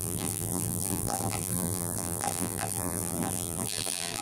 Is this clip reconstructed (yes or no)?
yes